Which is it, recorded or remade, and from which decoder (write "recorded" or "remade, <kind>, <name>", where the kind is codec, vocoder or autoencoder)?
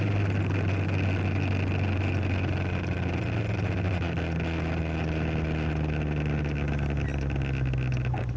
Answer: recorded